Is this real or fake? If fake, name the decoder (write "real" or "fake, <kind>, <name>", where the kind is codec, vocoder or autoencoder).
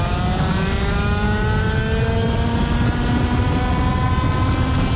real